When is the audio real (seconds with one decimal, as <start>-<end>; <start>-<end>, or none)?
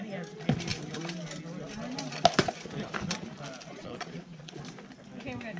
0.0-3.7; 4.6-5.6